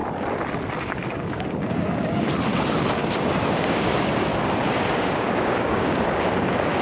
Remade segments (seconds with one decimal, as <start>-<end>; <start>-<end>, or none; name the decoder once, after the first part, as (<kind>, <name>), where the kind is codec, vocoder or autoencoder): 0.8-2.3 (codec, DAC); 3.0-4.3; 4.9-6.8